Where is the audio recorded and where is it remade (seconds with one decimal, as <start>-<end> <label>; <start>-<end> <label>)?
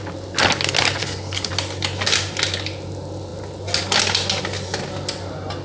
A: 0.0-1.0 recorded; 1.0-1.5 remade; 1.5-5.6 recorded